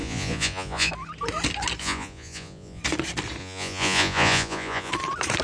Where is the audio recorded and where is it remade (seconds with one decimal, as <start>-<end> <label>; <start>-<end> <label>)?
0.0-0.9 remade; 0.9-1.8 recorded; 1.8-2.8 remade; 2.8-3.4 recorded; 3.4-4.9 remade; 4.9-5.4 recorded